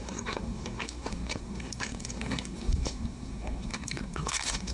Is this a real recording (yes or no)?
no